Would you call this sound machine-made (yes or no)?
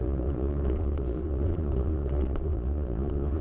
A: yes